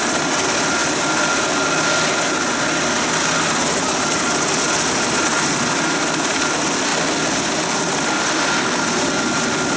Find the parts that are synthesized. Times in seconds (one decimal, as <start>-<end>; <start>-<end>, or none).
0.0-5.3; 6.2-6.9; 7.6-9.8